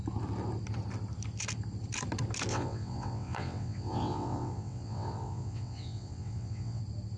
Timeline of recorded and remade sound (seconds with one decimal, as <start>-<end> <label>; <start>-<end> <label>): 0.0-2.5 recorded; 2.5-6.8 remade; 6.8-7.2 recorded